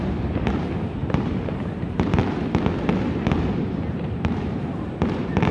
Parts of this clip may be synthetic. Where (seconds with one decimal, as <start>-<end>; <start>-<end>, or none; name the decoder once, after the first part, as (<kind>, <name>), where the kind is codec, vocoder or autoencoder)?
0.0-1.0 (vocoder, BigVGAN v2); 1.5-2.2; 3.5-5.5